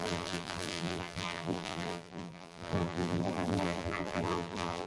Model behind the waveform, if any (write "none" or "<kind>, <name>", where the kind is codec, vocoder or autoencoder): vocoder, BigVGAN v2